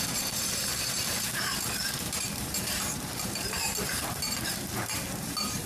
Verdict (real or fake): fake